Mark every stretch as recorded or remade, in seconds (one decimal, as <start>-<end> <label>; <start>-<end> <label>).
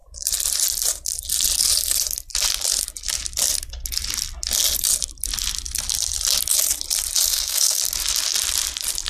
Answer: 0.0-7.3 recorded; 7.3-7.8 remade; 7.8-9.1 recorded